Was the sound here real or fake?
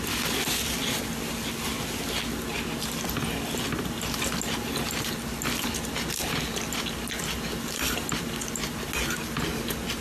real